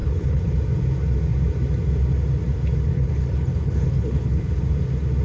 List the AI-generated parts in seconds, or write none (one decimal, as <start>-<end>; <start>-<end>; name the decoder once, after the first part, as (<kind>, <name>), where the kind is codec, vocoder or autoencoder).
0.0-0.5 (codec, HILCodec); 2.9-4.6

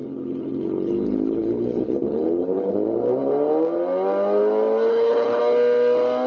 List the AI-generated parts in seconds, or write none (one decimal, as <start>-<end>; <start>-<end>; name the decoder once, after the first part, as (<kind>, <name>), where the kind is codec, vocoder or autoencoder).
0.0-2.7 (codec, HILCodec); 4.9-5.4

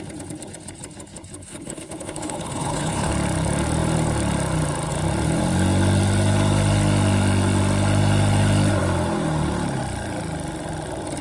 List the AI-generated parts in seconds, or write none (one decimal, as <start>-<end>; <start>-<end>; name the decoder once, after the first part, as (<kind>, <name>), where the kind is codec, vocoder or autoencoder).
1.5-3.1 (codec, HILCodec)

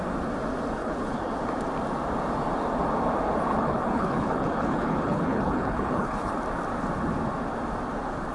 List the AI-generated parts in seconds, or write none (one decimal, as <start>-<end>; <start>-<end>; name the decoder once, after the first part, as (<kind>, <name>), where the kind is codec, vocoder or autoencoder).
0.8-1.3 (codec, HILCodec); 3.5-6.4

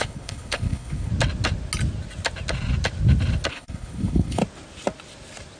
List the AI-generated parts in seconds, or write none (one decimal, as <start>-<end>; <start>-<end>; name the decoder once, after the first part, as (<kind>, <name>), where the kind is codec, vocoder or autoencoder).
0.0-1.1 (codec, HILCodec); 3.5-4.4

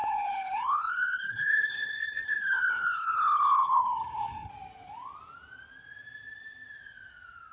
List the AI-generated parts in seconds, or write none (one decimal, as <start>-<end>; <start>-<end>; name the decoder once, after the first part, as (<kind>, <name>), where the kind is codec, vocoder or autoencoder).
0.0-4.5 (codec, HILCodec)